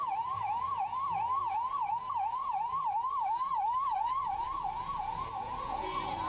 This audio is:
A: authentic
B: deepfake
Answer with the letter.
B